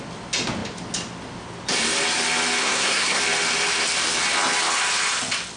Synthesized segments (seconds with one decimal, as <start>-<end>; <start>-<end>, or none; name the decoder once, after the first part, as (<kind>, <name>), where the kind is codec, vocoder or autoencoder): 2.6-3.2 (codec, SNAC)